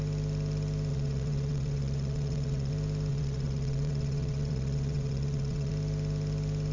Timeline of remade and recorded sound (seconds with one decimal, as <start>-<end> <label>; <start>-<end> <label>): 0.0-0.9 recorded; 0.9-2.7 remade; 2.7-3.1 recorded; 3.1-5.7 remade; 5.7-6.7 recorded